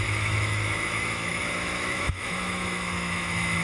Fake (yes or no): yes